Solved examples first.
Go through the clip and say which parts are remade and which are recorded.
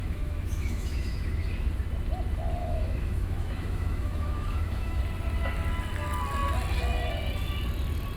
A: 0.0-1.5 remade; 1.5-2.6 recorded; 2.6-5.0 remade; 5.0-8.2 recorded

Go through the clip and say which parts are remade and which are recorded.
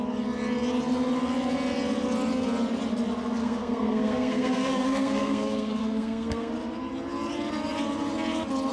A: 0.0-3.4 recorded; 3.4-6.5 remade; 6.5-8.7 recorded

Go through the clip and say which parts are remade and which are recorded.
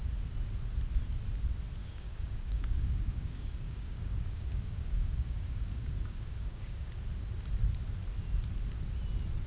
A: 0.0-1.8 recorded; 1.8-6.9 remade; 6.9-9.5 recorded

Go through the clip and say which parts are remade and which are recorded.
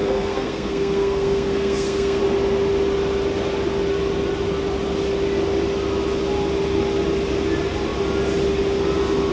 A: 0.0-2.2 remade; 2.2-9.3 recorded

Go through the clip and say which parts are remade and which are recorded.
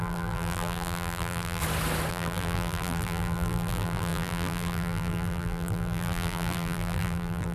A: 0.0-1.6 remade; 1.6-2.1 recorded; 2.1-7.5 remade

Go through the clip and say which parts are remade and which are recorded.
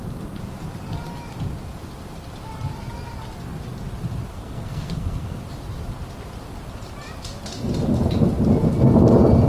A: 0.0-4.3 recorded; 4.3-5.4 remade; 5.4-9.5 recorded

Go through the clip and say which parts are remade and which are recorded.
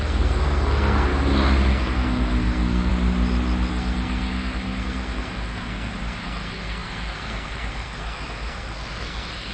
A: 0.0-1.1 remade; 1.1-1.7 recorded; 1.7-2.9 remade; 2.9-3.7 recorded; 3.7-9.5 remade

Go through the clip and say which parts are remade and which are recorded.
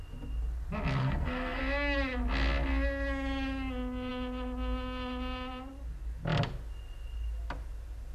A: 0.0-1.0 recorded; 1.0-1.6 remade; 1.6-8.1 recorded